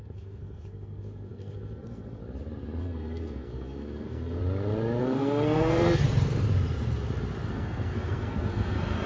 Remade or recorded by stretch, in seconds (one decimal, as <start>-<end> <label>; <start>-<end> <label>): 0.0-2.2 remade; 2.2-2.8 recorded; 2.8-4.4 remade; 4.4-5.0 recorded; 5.0-6.0 remade; 6.0-7.5 recorded; 7.5-9.1 remade